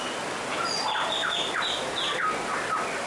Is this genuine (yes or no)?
yes